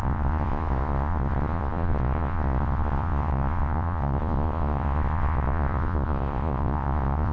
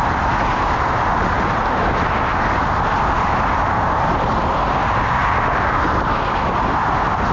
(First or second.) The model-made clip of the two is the first